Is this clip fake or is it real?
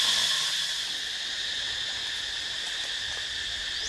real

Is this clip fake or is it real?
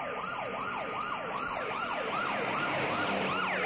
real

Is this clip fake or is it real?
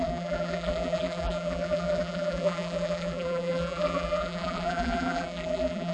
fake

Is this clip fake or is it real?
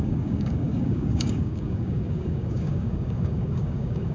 fake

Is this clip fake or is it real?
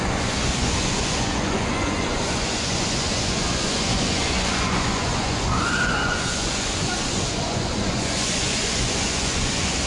fake